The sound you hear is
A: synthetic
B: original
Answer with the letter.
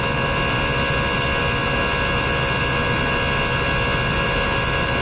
B